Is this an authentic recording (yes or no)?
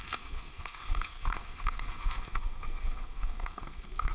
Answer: no